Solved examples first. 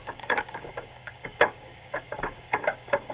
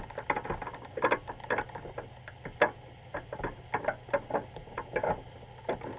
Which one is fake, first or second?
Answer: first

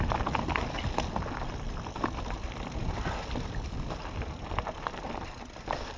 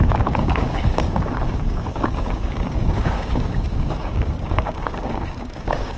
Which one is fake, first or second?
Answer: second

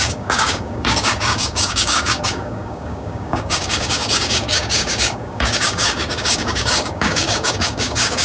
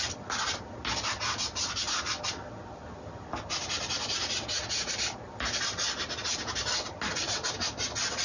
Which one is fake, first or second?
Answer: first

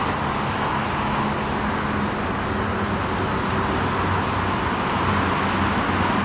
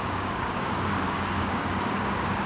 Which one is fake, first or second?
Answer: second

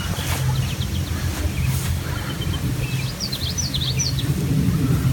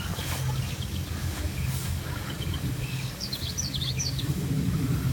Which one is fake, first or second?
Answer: second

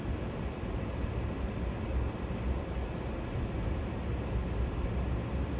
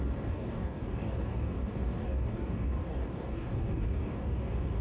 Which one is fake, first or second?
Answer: second